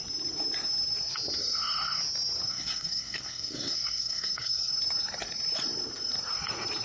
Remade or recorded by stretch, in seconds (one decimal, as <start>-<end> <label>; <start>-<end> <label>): 0.0-1.4 recorded; 1.4-2.0 remade; 2.0-2.5 recorded; 2.5-4.7 remade; 4.7-6.8 recorded